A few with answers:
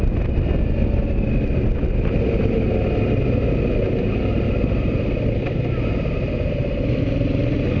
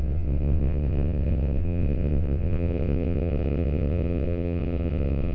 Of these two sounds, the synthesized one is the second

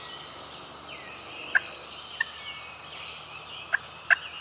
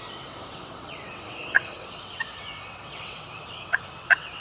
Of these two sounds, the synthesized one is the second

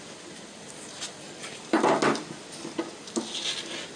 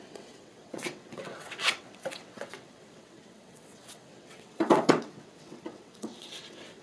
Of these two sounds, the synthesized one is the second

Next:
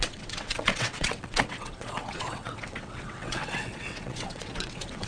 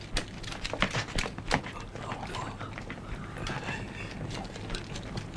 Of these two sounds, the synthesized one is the first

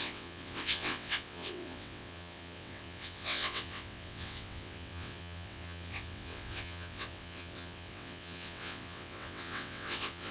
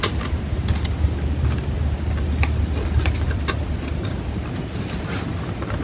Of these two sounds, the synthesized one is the first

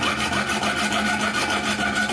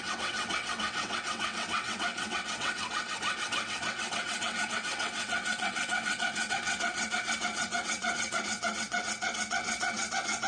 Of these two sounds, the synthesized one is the second